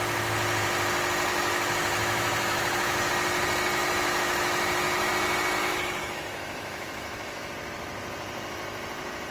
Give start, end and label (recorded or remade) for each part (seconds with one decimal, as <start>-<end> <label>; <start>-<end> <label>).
0.0-1.3 recorded; 1.3-3.1 remade; 3.1-3.8 recorded; 3.8-5.1 remade; 5.1-5.6 recorded; 5.6-7.5 remade; 7.5-9.3 recorded